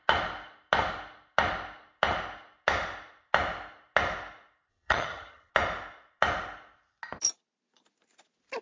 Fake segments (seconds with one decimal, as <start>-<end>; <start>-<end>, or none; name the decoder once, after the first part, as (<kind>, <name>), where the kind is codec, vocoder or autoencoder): 4.7-5.5 (vocoder, HiFi-GAN)

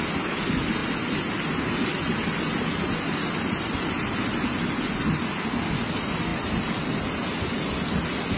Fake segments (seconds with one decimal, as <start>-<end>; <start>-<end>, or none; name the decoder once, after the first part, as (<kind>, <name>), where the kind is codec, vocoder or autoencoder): none

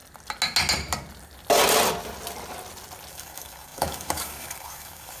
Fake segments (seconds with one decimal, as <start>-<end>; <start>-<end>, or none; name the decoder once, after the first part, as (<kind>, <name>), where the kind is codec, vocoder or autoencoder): 3.1-5.2 (codec, DAC)